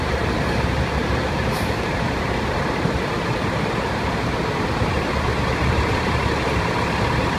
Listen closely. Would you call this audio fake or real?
fake